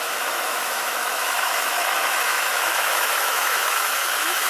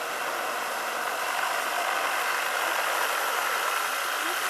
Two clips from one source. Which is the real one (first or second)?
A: second